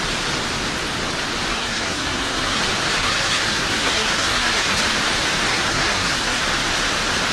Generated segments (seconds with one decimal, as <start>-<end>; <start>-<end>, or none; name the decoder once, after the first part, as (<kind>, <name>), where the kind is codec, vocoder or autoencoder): 1.5-2.6 (codec, SNAC); 3.0-4.8; 5.5-6.4